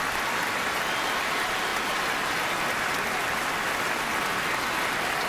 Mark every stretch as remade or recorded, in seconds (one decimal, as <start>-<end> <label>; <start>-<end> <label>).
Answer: 0.0-5.3 recorded